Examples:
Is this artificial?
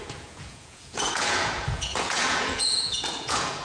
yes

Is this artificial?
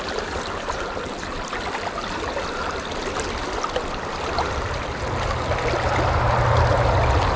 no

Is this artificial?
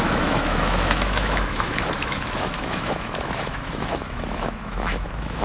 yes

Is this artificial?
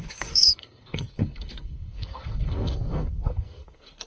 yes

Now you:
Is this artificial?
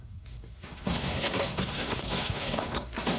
yes